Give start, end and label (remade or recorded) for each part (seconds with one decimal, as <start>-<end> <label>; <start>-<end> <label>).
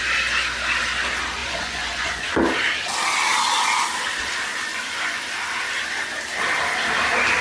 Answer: 0.0-1.4 recorded; 1.4-2.3 remade; 2.3-4.7 recorded; 4.7-5.2 remade; 5.2-7.4 recorded